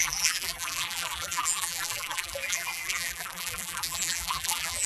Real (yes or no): no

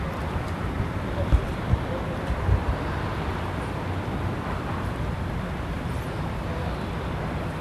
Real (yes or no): yes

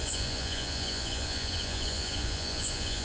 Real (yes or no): no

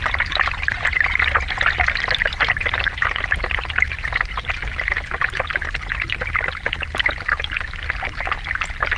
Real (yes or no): yes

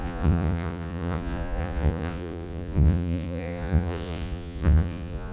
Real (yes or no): no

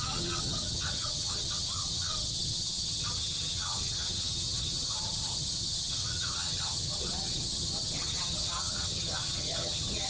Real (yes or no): no